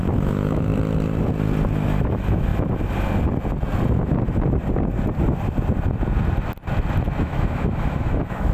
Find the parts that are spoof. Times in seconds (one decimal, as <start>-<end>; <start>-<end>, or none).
0.0-0.7; 2.0-2.5; 7.2-8.5